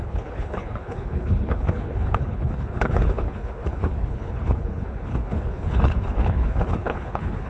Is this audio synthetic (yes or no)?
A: yes